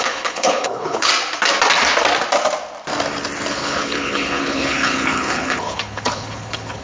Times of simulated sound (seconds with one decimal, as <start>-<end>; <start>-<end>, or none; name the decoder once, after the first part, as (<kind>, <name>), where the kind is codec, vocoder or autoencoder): 0.0-1.1 (codec, HILCodec); 3.5-6.8